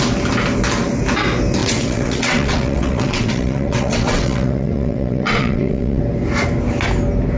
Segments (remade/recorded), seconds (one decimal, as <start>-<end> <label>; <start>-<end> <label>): 0.0-1.6 recorded; 1.6-6.0 remade; 6.0-7.4 recorded